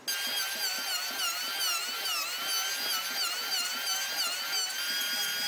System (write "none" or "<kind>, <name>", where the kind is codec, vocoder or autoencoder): none